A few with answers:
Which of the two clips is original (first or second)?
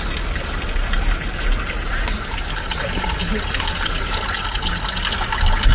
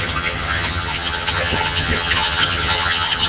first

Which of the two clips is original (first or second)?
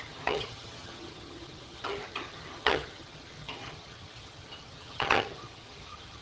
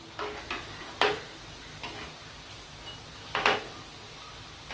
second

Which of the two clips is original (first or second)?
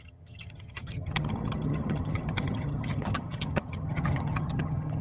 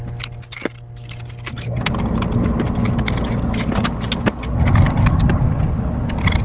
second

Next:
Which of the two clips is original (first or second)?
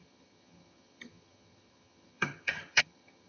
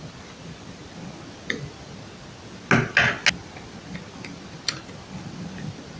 second